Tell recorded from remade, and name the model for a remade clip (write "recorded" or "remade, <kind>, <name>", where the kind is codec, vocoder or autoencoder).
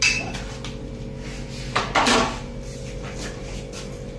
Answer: recorded